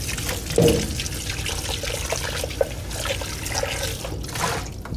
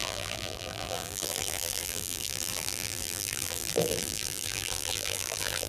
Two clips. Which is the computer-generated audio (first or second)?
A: second